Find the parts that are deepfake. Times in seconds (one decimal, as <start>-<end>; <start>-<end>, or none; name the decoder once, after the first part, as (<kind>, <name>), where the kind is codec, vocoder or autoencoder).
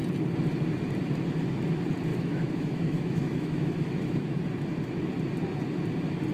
2.1-4.4 (autoencoder, DAC-VAE)